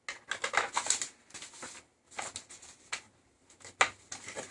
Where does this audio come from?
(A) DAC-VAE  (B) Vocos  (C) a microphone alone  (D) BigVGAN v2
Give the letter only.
C